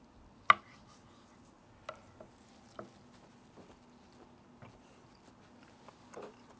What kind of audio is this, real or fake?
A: real